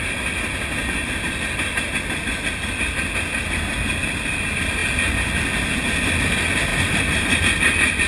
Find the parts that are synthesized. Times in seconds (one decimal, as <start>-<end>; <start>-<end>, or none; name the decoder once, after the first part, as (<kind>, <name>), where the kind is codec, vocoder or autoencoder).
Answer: 6.7-7.4 (vocoder, BigVGAN v2)